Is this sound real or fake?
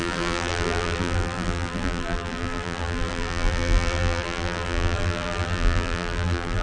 fake